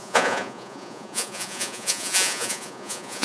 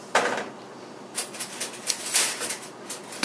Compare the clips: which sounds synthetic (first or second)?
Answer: first